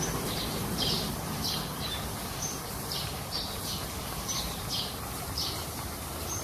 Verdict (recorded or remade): remade